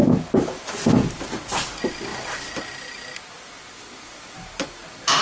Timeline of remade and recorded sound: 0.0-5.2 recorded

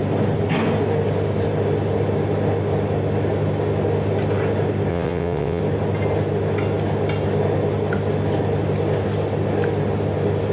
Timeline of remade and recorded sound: 0.0-4.9 recorded; 4.9-5.6 remade; 5.6-10.5 recorded